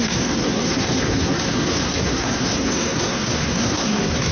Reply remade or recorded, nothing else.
remade